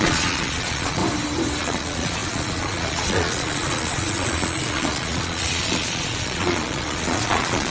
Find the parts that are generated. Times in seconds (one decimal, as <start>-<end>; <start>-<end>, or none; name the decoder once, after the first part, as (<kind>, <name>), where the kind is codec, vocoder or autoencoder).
0.0-1.0 (vocoder, Vocos); 1.6-7.7